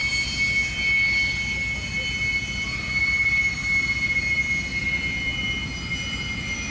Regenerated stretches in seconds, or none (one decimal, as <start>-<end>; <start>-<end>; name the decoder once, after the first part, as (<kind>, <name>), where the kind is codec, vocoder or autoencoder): none

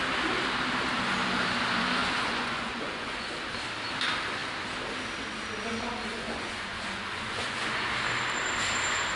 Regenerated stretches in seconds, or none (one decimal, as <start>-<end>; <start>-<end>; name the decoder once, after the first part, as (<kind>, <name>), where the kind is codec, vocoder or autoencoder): 2.0-3.3 (vocoder, Vocos); 6.1-7.9

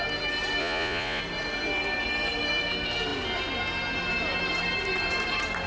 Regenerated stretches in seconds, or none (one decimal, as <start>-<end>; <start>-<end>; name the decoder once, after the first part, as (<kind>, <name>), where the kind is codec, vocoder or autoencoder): 0.6-1.2 (vocoder, Vocos)

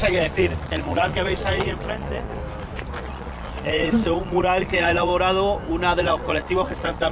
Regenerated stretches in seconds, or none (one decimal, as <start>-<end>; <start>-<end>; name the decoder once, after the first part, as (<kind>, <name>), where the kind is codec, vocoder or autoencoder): 0.0-2.4 (vocoder, Vocos); 3.0-5.1; 6.0-7.1

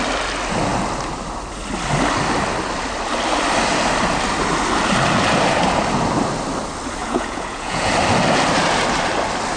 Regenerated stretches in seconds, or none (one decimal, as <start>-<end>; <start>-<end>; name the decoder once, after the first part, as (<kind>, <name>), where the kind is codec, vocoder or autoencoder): 7.0-7.9 (vocoder, Vocos)

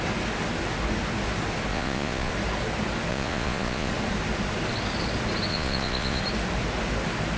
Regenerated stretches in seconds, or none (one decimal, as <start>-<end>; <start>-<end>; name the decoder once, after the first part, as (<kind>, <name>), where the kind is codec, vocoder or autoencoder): 1.7-2.3 (vocoder, Vocos); 3.1-3.9; 5.5-6.2

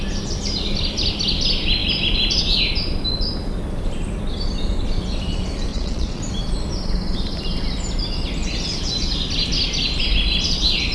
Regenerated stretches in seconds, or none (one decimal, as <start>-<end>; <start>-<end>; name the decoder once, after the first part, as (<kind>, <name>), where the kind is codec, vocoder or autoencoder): 5.7-6.2 (vocoder, Vocos)